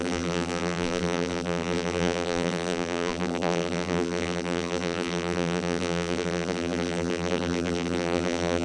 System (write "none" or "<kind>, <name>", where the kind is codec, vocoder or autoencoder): vocoder, BigVGAN v2